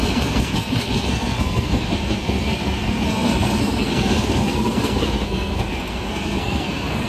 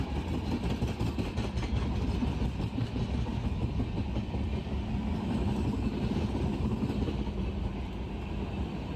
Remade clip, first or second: first